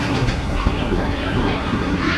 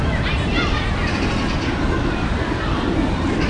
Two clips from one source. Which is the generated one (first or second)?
first